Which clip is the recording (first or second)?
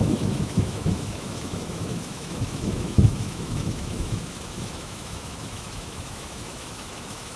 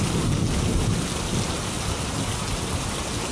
second